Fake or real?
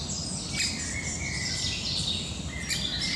real